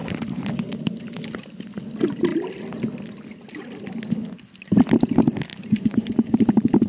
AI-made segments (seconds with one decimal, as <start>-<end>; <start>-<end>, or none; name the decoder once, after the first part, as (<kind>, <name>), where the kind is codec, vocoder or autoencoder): 0.0-1.2 (vocoder, BigVGAN v2); 5.5-6.9